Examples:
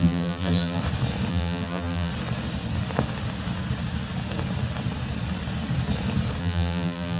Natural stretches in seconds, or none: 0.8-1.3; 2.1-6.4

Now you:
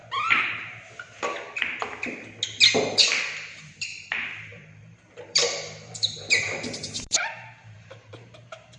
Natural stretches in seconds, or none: 0.0-3.5

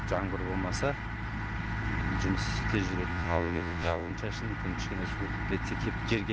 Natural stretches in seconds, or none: 0.0-3.1; 4.1-6.3

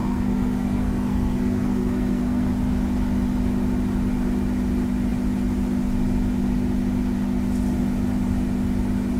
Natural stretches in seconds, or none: 2.5-9.2